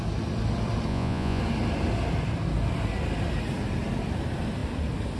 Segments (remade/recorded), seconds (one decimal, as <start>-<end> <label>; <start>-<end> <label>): 0.0-0.9 recorded; 0.9-1.4 remade; 1.4-5.2 recorded